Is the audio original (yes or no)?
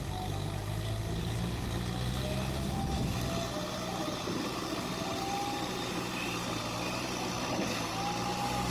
yes